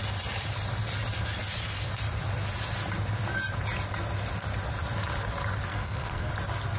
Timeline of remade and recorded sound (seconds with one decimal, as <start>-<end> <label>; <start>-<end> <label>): 0.0-5.7 recorded; 5.7-6.3 remade; 6.3-6.8 recorded